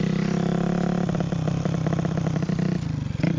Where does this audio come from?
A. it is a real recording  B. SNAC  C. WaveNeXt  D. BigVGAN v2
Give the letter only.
A